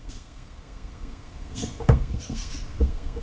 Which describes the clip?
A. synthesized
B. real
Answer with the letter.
A